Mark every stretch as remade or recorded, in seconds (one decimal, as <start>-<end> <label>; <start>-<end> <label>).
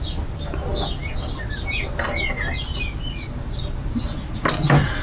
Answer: 0.0-5.0 recorded